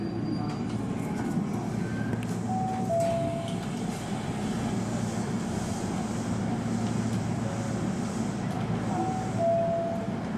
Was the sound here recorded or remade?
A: recorded